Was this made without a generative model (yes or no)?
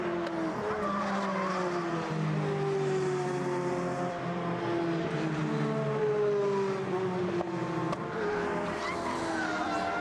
yes